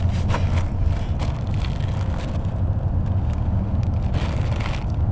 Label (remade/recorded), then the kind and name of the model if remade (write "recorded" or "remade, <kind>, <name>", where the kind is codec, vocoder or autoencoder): recorded